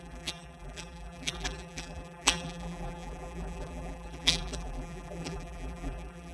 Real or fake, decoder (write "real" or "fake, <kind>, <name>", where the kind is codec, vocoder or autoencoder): fake, vocoder, BigVGAN v2